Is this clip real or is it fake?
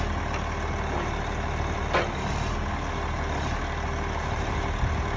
real